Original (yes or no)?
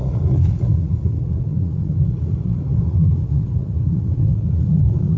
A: no